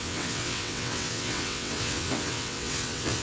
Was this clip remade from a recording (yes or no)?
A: yes